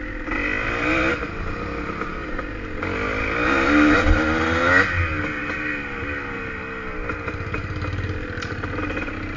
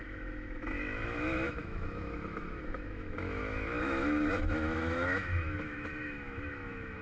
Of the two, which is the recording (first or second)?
first